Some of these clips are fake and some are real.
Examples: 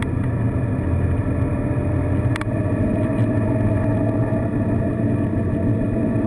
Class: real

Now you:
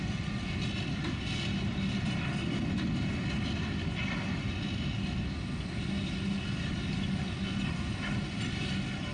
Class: real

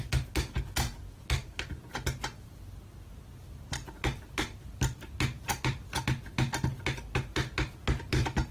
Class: real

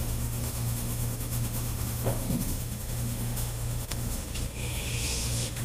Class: fake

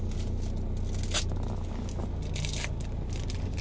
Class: real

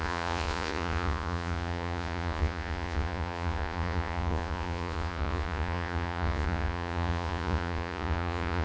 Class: fake